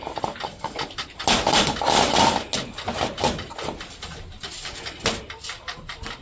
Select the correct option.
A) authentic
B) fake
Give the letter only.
A